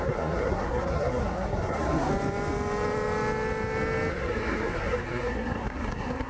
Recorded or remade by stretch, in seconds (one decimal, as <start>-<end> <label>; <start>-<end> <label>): 0.0-2.1 remade; 2.1-4.1 recorded; 4.1-6.3 remade